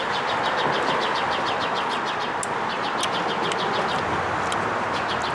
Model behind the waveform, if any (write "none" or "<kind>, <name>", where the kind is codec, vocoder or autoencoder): none